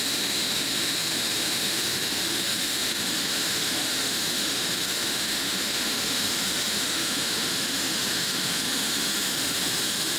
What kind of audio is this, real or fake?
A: fake